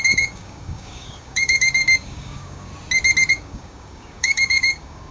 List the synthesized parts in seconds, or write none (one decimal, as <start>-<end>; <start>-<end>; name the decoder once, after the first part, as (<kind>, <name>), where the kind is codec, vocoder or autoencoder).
0.0-2.7 (codec, DAC); 3.3-5.1